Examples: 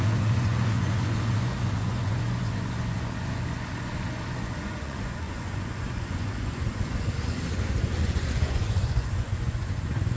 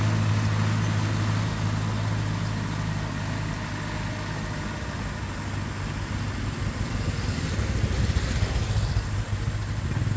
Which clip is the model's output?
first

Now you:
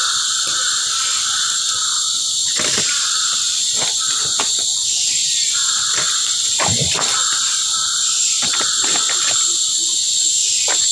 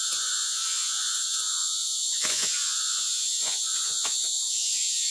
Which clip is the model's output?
second